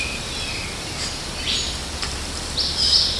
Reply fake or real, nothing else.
real